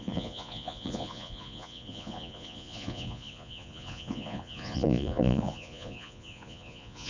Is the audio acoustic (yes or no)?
no